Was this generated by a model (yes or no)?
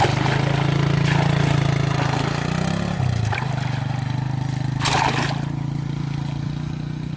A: no